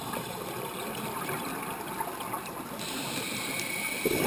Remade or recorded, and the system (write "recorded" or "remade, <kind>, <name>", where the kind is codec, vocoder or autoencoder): recorded